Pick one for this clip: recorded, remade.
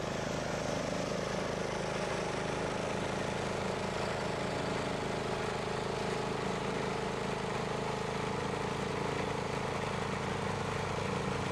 recorded